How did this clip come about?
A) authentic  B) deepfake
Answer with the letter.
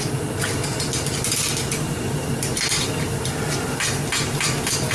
A